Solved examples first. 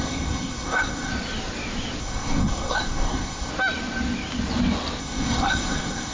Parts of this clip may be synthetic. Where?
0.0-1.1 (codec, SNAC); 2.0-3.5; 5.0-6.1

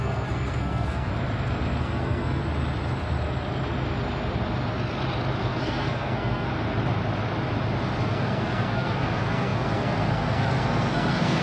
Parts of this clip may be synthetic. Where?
0.0-1.1 (codec, SNAC); 1.8-2.4; 5.4-6.5; 8.0-11.4

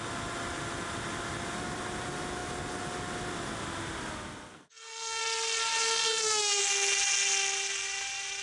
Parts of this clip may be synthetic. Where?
4.5-5.2 (codec, SNAC); 6.0-6.6

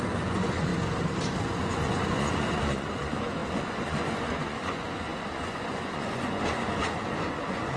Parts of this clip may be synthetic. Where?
0.0-0.7 (vocoder, Vocos); 1.5-7.8

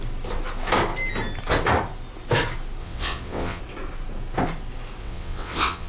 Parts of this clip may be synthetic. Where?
2.8-3.6 (vocoder, WaveNeXt); 5.0-5.9

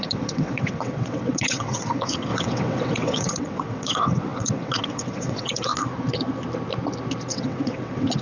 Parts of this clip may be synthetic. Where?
0.0-5.7 (vocoder, WaveNeXt); 7.3-8.2

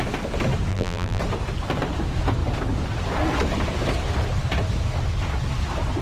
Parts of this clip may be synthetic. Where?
0.7-1.2 (vocoder, BigVGAN v2)

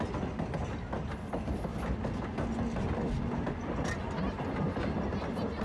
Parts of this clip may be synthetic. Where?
none